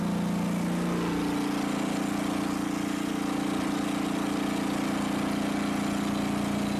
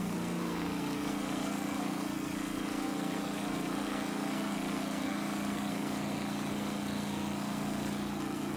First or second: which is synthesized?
second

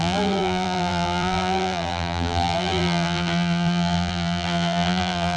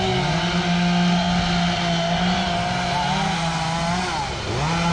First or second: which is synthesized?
first